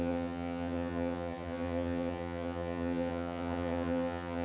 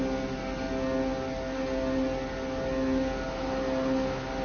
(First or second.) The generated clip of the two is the first